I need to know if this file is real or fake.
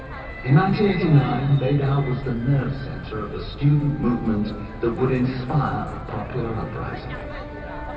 real